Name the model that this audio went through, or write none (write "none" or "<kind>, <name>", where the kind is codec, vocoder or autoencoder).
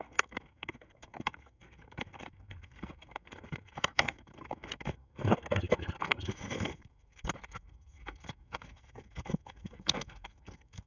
codec, SNAC